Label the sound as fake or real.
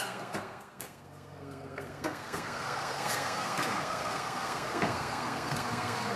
fake